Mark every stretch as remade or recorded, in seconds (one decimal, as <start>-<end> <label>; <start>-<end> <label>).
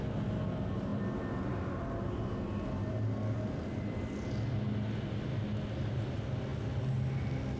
0.0-7.6 recorded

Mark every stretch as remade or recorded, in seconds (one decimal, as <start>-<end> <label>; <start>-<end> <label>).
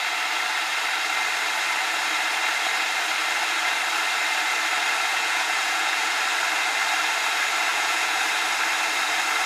0.0-5.1 recorded; 5.1-6.2 remade; 6.2-7.7 recorded; 7.7-8.2 remade; 8.2-9.5 recorded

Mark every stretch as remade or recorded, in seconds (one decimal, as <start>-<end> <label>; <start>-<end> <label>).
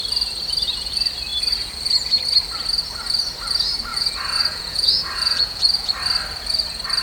0.0-3.9 recorded; 3.9-5.9 remade; 5.9-7.0 recorded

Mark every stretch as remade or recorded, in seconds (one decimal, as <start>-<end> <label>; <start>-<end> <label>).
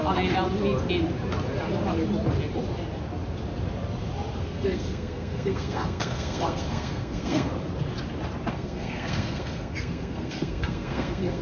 0.0-4.4 recorded; 4.4-7.5 remade; 7.5-8.5 recorded; 8.5-11.4 remade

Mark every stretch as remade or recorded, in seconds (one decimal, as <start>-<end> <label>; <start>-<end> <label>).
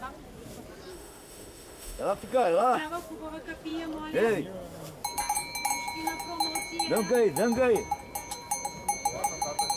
0.0-0.9 recorded; 0.9-2.9 remade; 2.9-9.8 recorded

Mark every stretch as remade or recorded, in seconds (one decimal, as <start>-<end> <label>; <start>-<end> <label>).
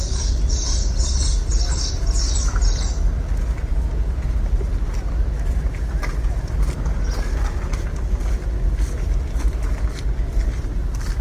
0.0-11.2 recorded